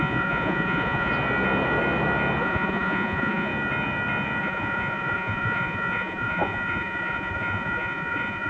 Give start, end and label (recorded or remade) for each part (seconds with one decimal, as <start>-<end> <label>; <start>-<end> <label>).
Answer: 0.0-1.1 remade; 1.1-2.4 recorded; 2.4-3.5 remade; 3.5-4.4 recorded; 4.4-8.5 remade